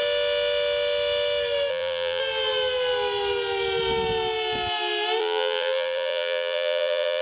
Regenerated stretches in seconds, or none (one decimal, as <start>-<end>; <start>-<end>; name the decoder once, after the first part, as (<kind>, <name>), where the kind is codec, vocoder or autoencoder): 1.7-2.2 (vocoder, BigVGAN v2); 5.2-7.2